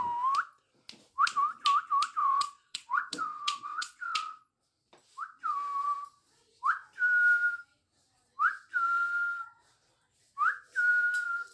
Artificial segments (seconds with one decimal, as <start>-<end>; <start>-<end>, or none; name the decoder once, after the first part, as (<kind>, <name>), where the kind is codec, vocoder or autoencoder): 2.2-4.5 (vocoder, WaveNeXt)